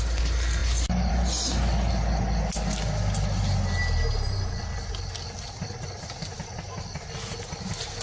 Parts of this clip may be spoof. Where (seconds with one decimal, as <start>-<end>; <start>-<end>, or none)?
none